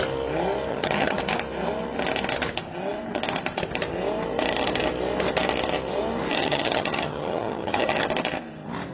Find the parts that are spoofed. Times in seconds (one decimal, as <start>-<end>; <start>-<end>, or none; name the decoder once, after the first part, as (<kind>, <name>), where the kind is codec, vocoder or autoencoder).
0.7-1.2 (vocoder, HiFi-GAN); 6.4-8.1